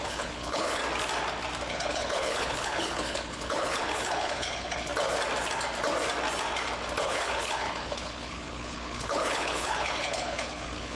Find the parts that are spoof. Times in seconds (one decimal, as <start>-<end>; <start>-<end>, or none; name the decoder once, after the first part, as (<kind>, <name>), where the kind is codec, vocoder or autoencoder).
0.0-0.8 (codec, HILCodec); 1.7-4.9; 7.0-10.9